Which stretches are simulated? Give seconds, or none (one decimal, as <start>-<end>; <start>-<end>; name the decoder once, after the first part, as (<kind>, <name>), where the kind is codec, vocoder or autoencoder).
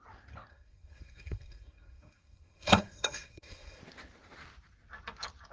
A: 0.5-3.8 (codec, SNAC)